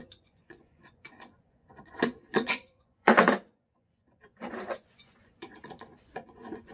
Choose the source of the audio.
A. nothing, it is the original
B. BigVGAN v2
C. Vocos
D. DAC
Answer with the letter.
C